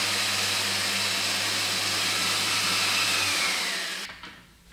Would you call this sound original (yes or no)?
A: yes